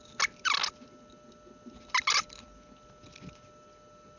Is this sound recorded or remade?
recorded